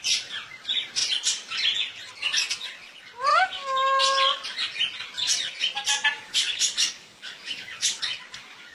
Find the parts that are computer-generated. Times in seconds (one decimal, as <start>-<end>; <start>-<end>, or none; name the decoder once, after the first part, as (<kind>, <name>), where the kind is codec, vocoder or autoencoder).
3.3-4.0 (codec, DAC); 6.3-8.0